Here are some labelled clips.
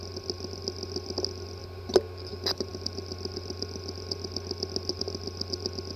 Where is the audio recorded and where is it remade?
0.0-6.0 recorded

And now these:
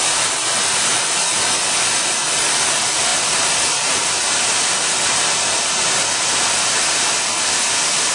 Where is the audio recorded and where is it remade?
0.0-3.1 recorded; 3.1-3.9 remade; 3.9-8.1 recorded

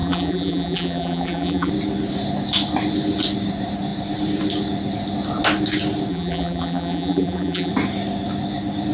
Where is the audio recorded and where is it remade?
0.0-1.7 remade; 1.7-6.1 recorded; 6.1-7.7 remade; 7.7-8.9 recorded

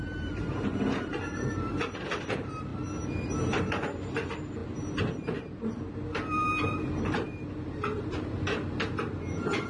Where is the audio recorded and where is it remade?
0.0-2.7 remade; 2.7-3.6 recorded; 3.6-9.7 remade